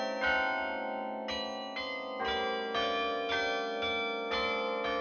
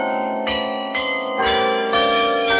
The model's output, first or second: second